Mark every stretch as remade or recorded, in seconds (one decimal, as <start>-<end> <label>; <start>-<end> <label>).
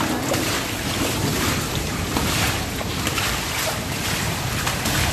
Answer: 0.0-1.3 recorded; 1.3-3.4 remade; 3.4-5.1 recorded